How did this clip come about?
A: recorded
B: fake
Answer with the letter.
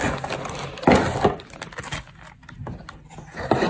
A